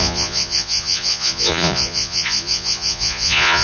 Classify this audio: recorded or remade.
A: remade